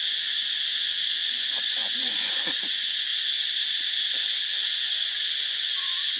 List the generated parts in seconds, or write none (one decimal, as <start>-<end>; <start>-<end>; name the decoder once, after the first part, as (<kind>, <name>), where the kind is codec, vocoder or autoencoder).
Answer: 0.0-3.1 (vocoder, Vocos); 4.7-6.2